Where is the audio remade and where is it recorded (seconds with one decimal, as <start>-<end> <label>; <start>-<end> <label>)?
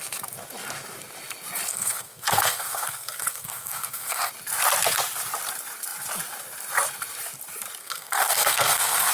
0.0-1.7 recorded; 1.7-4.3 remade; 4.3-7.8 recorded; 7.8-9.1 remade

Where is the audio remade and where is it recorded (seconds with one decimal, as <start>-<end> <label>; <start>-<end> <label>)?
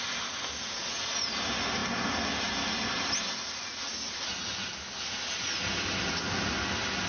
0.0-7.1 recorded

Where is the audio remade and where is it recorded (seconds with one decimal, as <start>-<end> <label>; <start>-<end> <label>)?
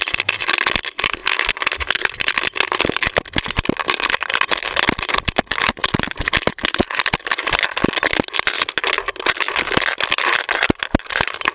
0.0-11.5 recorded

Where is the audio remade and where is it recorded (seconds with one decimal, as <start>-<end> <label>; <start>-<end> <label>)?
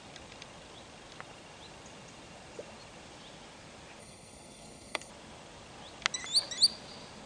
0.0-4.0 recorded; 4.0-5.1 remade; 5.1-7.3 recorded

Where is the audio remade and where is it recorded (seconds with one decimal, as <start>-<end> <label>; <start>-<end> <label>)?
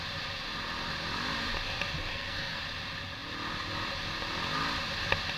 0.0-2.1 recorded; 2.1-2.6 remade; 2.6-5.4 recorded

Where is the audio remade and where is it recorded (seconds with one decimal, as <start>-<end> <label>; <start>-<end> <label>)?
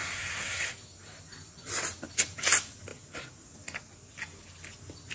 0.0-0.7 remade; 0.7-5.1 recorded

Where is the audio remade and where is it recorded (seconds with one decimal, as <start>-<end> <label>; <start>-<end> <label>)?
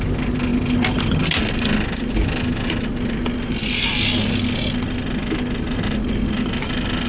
0.0-7.1 recorded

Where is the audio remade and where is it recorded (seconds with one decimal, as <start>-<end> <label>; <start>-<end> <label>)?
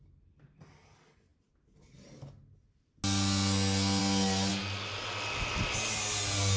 0.0-6.6 recorded